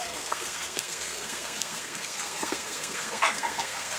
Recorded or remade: remade